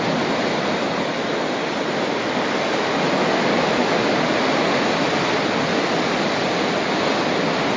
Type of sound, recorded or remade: recorded